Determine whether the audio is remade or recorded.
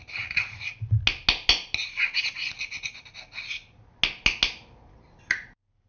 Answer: recorded